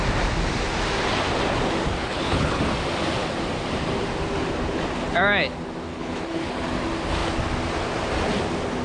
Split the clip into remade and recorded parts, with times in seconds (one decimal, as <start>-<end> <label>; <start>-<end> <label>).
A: 0.0-2.0 recorded; 2.0-2.6 remade; 2.6-5.9 recorded; 5.9-6.6 remade; 6.6-8.8 recorded

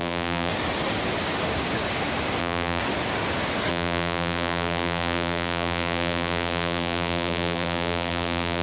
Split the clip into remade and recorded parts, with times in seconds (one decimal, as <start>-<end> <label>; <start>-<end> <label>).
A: 0.0-0.5 remade; 0.5-2.4 recorded; 2.4-2.8 remade; 2.8-3.7 recorded; 3.7-8.6 remade

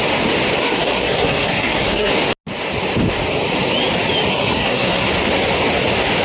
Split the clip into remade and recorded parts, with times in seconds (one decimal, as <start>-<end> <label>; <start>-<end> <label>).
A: 0.0-0.6 recorded; 0.6-2.1 remade; 2.1-4.3 recorded; 4.3-5.1 remade; 5.1-6.2 recorded

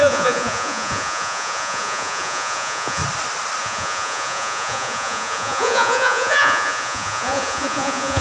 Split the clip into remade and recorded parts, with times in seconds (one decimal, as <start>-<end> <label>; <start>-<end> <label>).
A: 0.0-3.0 remade; 3.0-3.6 recorded; 3.6-8.2 remade